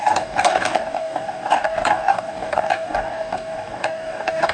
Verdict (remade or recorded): remade